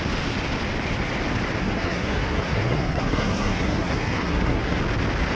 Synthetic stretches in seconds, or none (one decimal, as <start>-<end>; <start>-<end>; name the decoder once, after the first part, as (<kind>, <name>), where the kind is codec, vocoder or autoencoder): 1.6-4.8 (codec, SNAC)